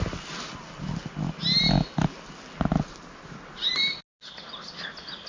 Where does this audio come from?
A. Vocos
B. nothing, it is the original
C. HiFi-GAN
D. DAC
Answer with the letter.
B